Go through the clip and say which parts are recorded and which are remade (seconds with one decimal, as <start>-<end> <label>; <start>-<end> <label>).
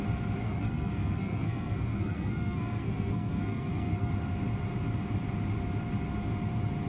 0.0-0.4 recorded; 0.4-4.1 remade; 4.1-6.9 recorded